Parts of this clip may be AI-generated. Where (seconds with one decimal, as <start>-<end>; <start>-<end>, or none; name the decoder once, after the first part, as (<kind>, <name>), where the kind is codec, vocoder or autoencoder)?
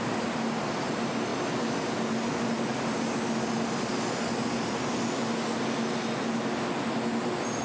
none